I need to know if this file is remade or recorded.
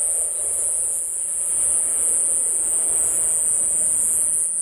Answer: recorded